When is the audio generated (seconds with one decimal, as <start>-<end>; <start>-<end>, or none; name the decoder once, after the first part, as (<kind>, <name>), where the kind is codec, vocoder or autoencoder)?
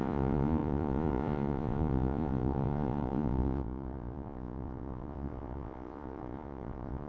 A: 0.0-7.1 (vocoder, Vocos)